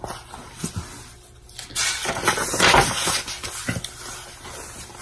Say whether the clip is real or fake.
real